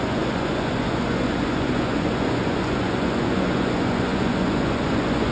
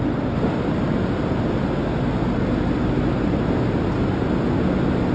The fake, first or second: first